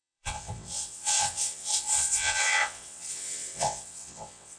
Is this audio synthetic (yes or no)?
yes